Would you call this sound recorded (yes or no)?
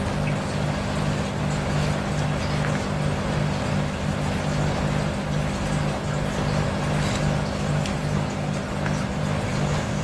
yes